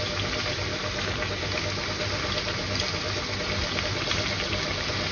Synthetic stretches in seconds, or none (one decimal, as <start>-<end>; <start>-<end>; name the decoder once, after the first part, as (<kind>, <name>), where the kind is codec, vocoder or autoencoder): none